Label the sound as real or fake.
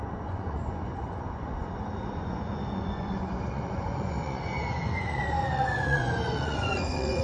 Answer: fake